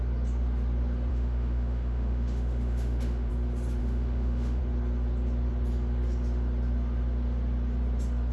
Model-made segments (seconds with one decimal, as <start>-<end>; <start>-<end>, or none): 1.1-3.3; 3.8-4.6